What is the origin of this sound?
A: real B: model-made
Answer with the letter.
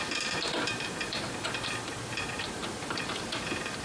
B